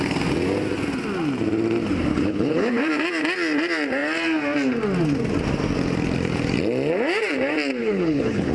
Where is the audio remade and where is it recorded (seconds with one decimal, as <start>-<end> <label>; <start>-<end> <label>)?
0.0-2.1 recorded; 2.1-2.8 remade; 2.8-7.8 recorded; 7.8-8.5 remade